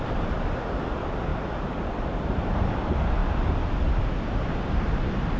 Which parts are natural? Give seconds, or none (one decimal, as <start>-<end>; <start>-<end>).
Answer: 0.0-5.4